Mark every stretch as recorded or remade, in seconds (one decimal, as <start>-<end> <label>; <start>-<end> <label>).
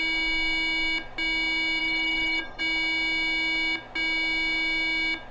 0.0-1.8 recorded; 1.8-2.6 remade; 2.6-5.3 recorded